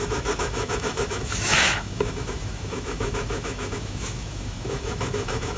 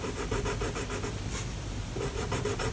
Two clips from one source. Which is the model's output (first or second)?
first